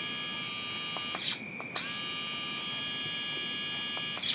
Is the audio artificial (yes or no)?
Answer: no